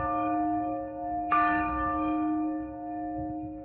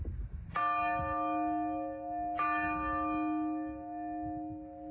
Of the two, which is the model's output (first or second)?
first